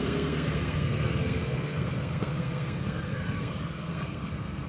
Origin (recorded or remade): remade